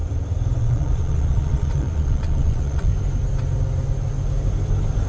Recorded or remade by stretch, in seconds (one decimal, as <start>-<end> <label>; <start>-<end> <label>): 0.0-0.6 recorded; 0.6-2.9 remade; 2.9-5.1 recorded